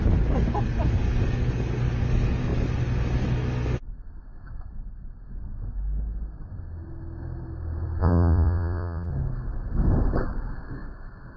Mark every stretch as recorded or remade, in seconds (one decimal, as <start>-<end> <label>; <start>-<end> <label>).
0.0-8.0 recorded; 8.0-9.1 remade; 9.1-11.4 recorded